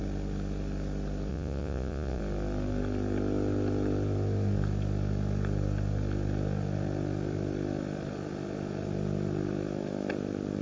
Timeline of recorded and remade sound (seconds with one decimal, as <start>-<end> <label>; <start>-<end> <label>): 0.0-1.3 recorded; 1.3-2.2 remade; 2.2-10.6 recorded

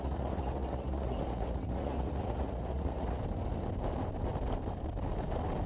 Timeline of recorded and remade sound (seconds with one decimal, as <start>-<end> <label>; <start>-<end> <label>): 0.0-3.2 remade; 3.2-5.7 recorded

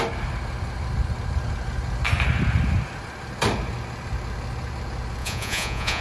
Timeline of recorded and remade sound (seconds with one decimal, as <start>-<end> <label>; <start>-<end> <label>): 0.0-5.2 recorded; 5.2-6.0 remade

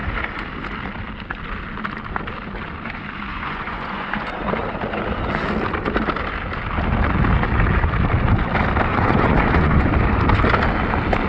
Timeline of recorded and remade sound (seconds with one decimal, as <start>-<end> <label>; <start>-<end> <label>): 0.0-3.3 recorded; 3.3-4.4 remade; 4.4-8.9 recorded; 8.9-9.9 remade; 9.9-11.3 recorded